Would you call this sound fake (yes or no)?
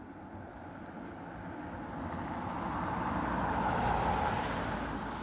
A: no